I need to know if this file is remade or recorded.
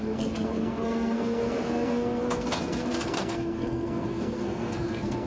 remade